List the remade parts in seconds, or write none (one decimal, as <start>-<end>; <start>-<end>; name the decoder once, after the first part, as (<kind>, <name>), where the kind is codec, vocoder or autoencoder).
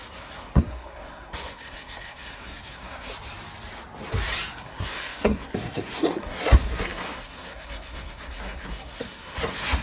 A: 0.0-3.1 (codec, SNAC); 4.5-9.8